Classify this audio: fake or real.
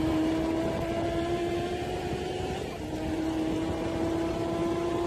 fake